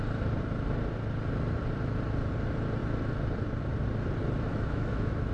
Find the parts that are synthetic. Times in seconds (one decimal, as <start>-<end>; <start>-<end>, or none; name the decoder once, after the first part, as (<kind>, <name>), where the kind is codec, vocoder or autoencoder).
4.5-5.3 (autoencoder, DAC-VAE)

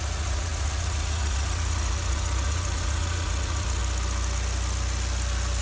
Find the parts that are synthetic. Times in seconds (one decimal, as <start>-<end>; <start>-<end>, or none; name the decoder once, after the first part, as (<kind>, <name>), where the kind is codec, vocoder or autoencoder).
0.0-3.8 (vocoder, Vocos)

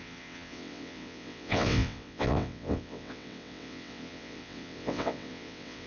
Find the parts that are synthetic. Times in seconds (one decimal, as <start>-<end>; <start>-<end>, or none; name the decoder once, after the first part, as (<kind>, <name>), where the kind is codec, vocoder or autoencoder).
0.0-5.9 (vocoder, WaveNeXt)

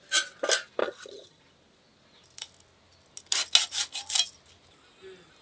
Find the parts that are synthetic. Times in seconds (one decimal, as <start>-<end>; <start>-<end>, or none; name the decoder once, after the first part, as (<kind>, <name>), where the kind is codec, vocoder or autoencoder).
0.8-1.4 (vocoder, HiFi-GAN)

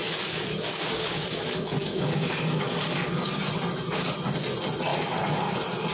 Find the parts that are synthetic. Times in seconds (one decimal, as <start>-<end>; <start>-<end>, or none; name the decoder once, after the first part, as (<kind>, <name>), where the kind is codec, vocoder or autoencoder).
0.0-3.4 (codec, DAC)

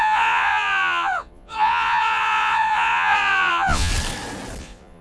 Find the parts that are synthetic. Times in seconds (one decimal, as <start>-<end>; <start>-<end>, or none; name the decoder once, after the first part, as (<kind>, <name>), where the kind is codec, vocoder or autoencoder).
0.0-3.9 (vocoder, Vocos); 4.6-5.0

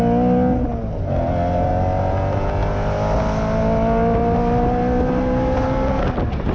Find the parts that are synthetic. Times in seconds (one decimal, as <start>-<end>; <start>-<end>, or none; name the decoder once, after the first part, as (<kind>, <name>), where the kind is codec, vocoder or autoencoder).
none

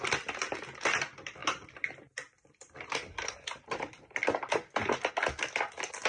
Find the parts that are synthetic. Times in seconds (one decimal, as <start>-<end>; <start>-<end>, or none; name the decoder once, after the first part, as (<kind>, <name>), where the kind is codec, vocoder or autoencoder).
1.4-5.1 (vocoder, BigVGAN v2)